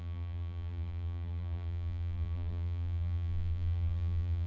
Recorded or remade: remade